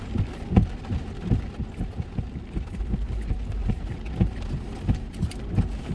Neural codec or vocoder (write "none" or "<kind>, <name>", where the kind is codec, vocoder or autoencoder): none